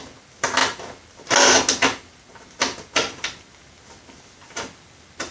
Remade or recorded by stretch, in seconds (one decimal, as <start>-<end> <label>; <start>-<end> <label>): 0.0-5.3 recorded